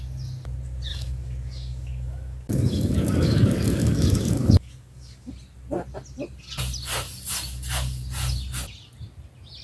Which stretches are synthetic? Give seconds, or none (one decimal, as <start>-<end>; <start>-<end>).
0.9-5.3